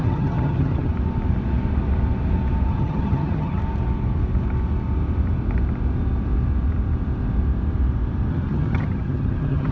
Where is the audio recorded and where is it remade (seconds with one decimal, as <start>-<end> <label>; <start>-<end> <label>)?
0.0-0.9 remade; 0.9-2.7 recorded; 2.7-3.6 remade; 3.6-8.3 recorded; 8.3-9.7 remade